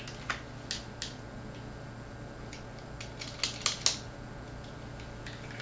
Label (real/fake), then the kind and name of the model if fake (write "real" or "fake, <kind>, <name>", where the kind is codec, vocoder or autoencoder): real